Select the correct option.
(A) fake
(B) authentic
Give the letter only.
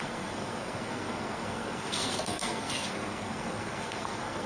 A